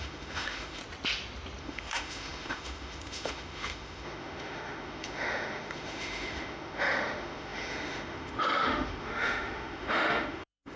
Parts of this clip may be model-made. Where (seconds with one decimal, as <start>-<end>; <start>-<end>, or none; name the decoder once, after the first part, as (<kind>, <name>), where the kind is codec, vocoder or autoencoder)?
0.0-0.8 (autoencoder, DAC-VAE); 1.6-10.8